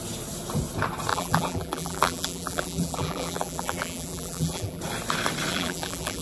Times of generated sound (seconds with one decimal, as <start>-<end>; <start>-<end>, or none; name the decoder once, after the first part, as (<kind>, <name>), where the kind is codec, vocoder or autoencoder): 1.1-4.8 (vocoder, BigVGAN v2); 5.5-6.2